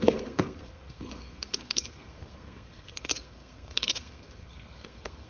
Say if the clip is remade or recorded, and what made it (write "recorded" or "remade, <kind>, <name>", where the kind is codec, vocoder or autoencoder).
remade, codec, SNAC